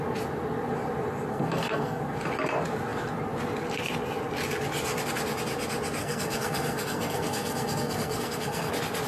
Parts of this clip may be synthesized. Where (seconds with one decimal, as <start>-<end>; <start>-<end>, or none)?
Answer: 1.3-2.0; 6.0-8.7

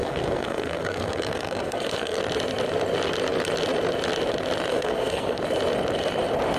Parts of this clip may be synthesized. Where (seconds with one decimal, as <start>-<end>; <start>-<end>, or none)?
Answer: 0.0-2.2; 4.7-5.4

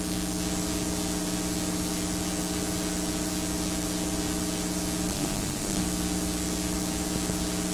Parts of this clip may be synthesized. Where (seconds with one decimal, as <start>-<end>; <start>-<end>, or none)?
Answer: 5.1-5.8